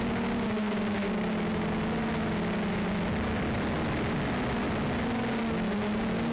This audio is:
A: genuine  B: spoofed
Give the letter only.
A